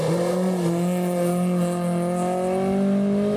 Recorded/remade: recorded